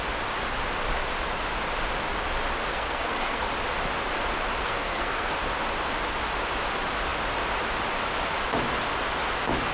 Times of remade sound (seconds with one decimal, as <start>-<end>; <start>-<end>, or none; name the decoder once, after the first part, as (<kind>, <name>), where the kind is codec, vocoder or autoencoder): 2.7-3.4 (codec, SNAC); 4.6-5.3